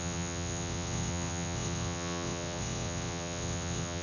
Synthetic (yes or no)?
yes